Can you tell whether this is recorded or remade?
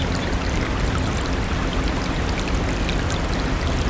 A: recorded